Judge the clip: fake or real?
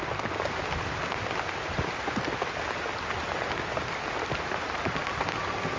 real